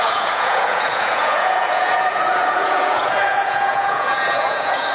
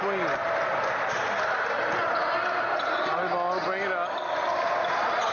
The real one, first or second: second